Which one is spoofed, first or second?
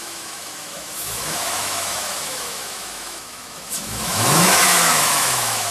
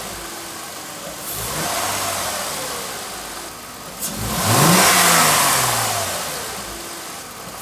first